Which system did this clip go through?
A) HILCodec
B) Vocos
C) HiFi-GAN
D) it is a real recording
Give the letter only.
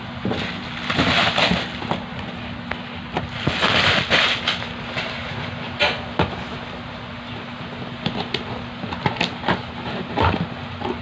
D